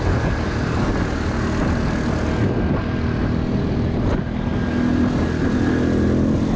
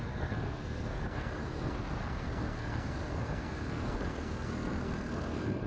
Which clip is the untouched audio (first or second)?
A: first